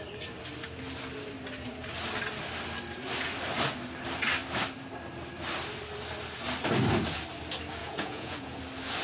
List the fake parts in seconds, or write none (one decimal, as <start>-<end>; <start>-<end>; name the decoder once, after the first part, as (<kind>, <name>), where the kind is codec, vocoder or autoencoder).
7.8-8.6 (vocoder, Vocos)